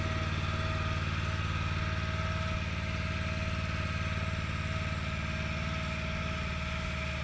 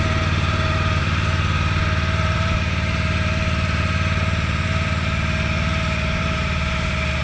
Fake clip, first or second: second